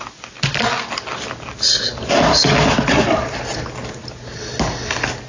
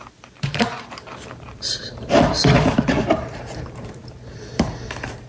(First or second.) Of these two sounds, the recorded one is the first